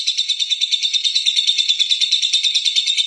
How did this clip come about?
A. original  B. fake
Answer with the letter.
B